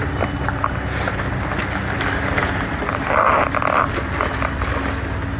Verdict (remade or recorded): recorded